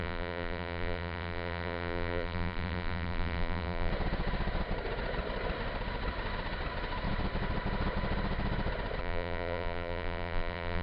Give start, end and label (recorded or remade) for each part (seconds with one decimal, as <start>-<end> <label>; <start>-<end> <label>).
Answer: 0.0-3.9 remade; 3.9-9.0 recorded; 9.0-10.8 remade